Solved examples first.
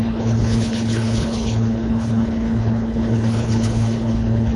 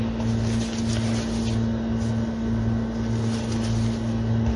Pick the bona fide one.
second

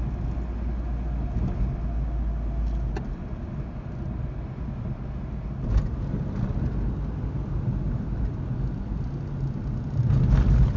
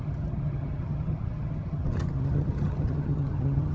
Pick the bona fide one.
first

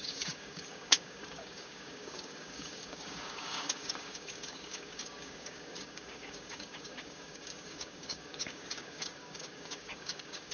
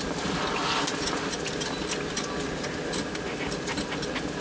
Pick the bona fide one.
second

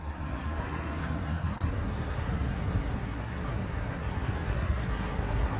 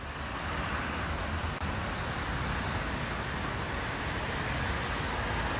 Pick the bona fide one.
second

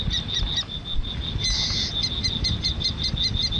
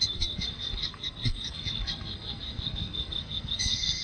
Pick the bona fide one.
first